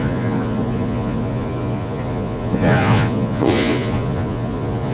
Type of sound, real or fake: fake